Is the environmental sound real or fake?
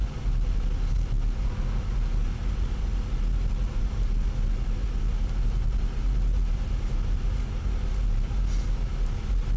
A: real